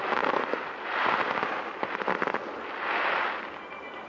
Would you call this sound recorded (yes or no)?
yes